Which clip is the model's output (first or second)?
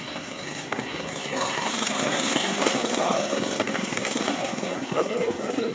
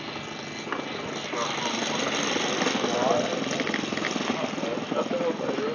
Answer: first